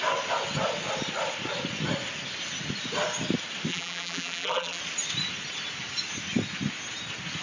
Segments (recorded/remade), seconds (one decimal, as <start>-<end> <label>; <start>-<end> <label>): 0.0-3.7 recorded; 3.7-4.8 remade; 4.8-7.4 recorded